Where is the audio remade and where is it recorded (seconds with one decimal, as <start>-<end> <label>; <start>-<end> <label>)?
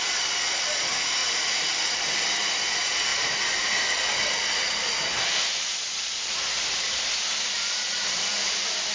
0.0-1.2 recorded; 1.2-2.1 remade; 2.1-8.9 recorded